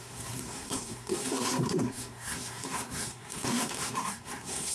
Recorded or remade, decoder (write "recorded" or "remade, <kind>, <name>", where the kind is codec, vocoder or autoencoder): remade, codec, SNAC